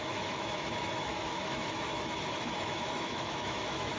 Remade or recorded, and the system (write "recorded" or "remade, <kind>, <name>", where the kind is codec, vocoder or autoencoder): remade, autoencoder, DAC-VAE